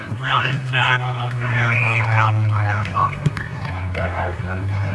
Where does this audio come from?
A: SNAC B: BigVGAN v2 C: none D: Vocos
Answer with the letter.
A